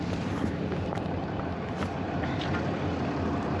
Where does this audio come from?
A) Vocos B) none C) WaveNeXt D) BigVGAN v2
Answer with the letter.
D